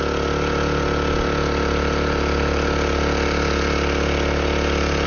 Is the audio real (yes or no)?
yes